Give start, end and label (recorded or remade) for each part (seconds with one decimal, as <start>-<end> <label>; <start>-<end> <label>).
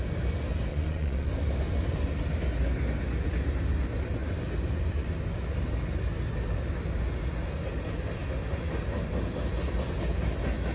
0.0-0.7 recorded; 0.7-1.3 remade; 1.3-10.7 recorded